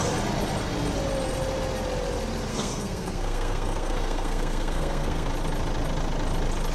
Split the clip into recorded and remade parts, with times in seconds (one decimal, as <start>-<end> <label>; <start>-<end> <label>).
0.0-2.5 recorded; 2.5-5.3 remade; 5.3-6.7 recorded